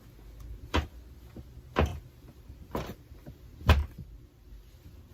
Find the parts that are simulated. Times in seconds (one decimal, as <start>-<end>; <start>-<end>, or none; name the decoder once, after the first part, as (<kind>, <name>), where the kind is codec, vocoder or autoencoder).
1.9-3.4 (vocoder, BigVGAN v2)